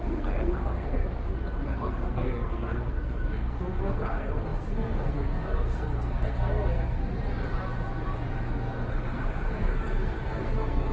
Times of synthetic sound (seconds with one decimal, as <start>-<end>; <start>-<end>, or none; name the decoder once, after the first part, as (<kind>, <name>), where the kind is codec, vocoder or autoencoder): 0.0-1.0 (codec, SNAC); 1.6-7.0; 8.9-10.9